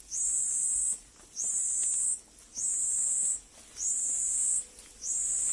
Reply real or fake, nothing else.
real